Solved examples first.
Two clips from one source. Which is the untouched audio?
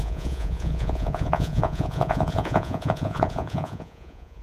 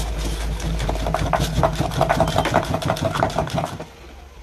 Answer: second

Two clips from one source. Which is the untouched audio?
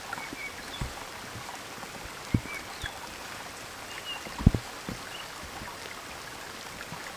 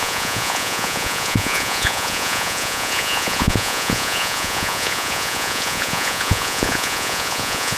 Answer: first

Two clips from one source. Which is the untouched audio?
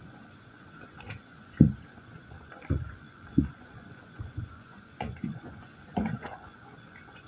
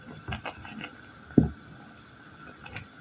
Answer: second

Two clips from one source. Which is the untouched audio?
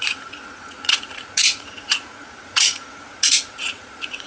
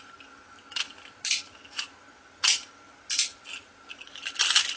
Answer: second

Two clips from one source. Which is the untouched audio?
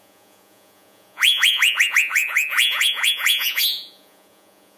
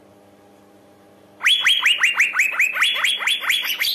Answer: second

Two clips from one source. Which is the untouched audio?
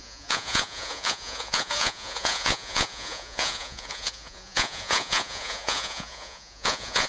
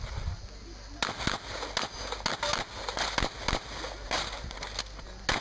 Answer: second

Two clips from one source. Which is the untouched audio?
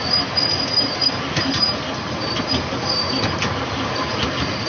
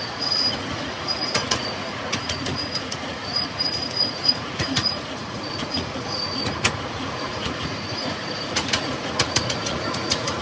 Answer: first